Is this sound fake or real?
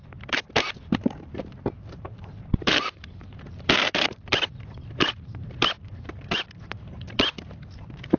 fake